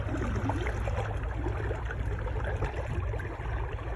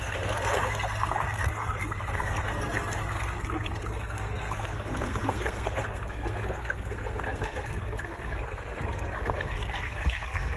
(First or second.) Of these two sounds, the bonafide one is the first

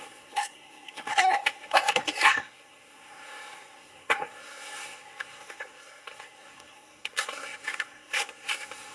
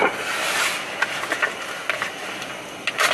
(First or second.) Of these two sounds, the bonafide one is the second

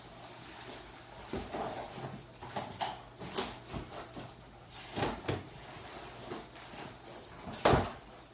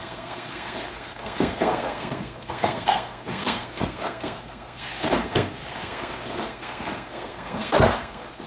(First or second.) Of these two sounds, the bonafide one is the first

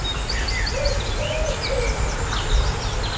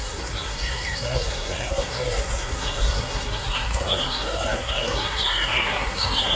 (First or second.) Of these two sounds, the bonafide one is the first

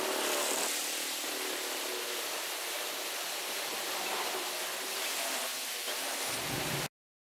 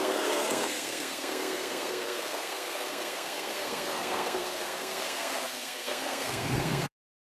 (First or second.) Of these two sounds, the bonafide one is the first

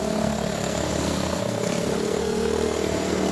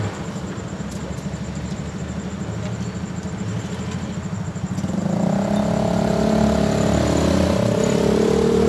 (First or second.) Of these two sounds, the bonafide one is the second